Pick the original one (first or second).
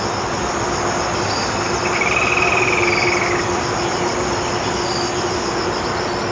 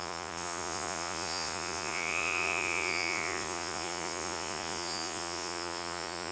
first